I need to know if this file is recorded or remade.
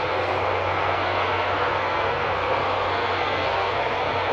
remade